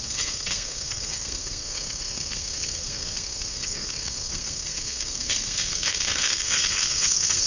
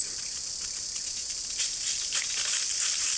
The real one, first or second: second